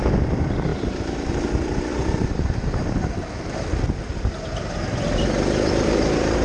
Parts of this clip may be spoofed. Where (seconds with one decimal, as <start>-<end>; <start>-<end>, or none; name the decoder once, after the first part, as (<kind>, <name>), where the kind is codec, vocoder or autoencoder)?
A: none